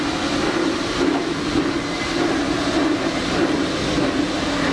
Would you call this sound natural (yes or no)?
yes